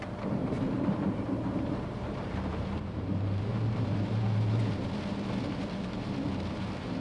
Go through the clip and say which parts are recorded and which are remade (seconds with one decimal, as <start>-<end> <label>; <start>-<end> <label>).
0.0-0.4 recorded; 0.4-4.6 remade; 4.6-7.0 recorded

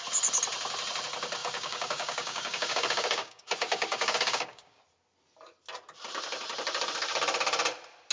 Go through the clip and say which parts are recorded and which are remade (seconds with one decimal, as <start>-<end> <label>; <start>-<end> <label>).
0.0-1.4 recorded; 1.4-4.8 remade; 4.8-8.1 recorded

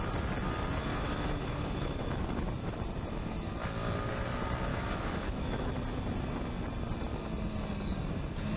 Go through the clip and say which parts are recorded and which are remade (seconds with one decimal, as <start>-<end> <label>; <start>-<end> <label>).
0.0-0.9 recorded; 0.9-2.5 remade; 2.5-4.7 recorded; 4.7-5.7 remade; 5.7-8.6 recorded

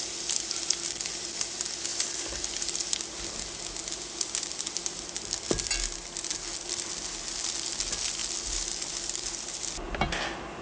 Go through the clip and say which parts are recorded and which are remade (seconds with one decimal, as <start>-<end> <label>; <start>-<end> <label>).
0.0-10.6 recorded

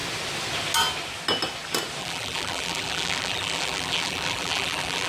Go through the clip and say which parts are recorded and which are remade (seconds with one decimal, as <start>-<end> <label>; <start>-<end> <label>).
0.0-2.0 recorded; 2.0-5.1 remade

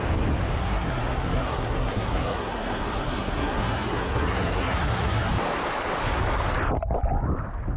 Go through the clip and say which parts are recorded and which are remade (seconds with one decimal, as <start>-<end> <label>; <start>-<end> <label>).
0.0-0.6 recorded; 0.6-5.3 remade; 5.3-7.8 recorded

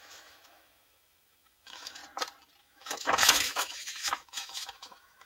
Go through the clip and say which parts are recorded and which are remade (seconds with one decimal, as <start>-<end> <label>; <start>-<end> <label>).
0.0-2.0 remade; 2.0-2.6 recorded; 2.6-5.3 remade